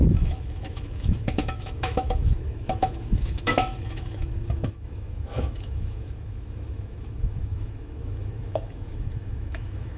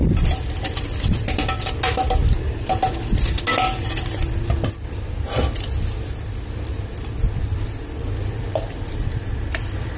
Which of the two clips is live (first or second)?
second